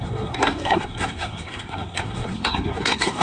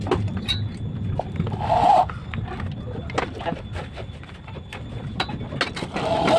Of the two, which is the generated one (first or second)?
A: first